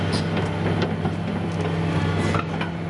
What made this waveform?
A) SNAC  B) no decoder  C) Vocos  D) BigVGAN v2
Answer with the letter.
B